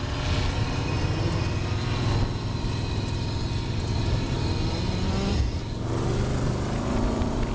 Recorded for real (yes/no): yes